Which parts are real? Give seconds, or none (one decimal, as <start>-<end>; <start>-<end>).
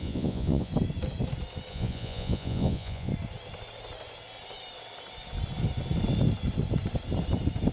0.7-1.7; 3.1-7.7